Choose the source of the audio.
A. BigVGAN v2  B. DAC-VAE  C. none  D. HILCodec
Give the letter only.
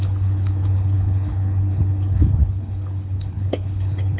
D